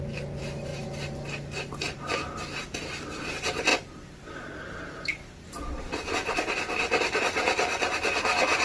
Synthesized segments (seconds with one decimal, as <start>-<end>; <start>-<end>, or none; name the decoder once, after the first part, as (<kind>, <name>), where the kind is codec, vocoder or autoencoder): none